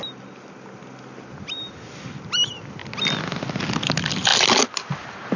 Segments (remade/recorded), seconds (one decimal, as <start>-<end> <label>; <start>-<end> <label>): 0.0-5.4 recorded